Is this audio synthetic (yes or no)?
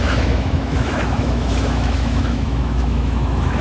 yes